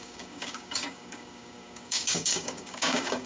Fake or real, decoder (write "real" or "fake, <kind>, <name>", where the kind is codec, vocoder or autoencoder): fake, codec, DAC